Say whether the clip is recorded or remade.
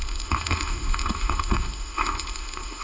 remade